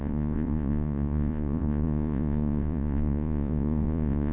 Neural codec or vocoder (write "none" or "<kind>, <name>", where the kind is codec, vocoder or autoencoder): vocoder, Vocos